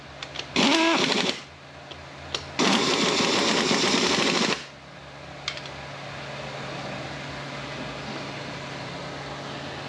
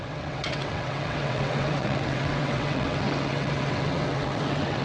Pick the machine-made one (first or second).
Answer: second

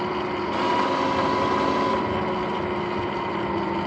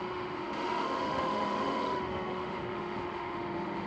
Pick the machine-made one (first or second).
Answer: second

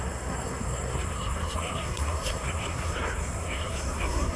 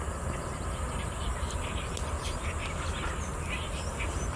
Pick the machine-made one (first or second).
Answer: first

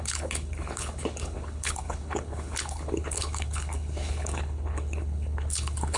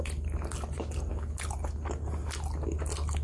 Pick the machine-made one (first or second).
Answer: first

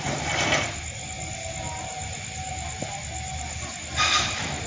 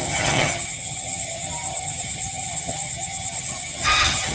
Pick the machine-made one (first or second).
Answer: second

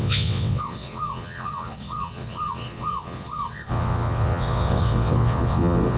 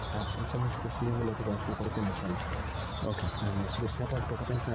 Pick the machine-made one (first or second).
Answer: first